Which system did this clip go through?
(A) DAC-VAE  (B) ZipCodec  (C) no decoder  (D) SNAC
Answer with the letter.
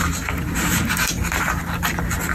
C